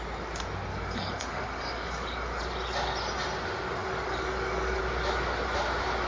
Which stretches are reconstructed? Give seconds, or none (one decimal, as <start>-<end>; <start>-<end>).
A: 0.7-2.4; 3.8-4.8